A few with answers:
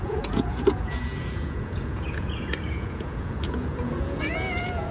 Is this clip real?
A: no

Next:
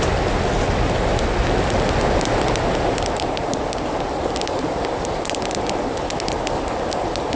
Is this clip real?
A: yes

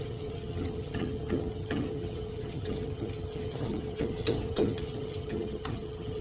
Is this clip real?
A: no